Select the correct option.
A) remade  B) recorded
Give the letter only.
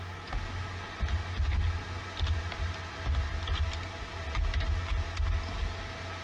B